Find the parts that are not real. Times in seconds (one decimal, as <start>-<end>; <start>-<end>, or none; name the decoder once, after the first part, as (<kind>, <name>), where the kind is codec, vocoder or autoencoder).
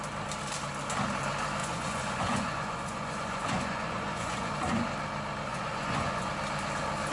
1.6-4.5 (vocoder, Vocos); 5.5-6.3